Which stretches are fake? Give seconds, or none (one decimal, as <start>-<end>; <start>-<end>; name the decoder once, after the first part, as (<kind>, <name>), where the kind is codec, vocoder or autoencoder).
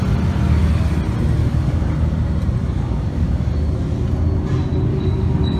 1.4-1.9 (codec, DAC); 2.6-3.5; 4.9-5.6